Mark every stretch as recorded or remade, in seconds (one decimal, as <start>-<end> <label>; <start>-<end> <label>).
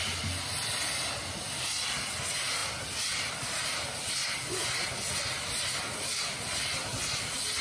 0.0-7.6 recorded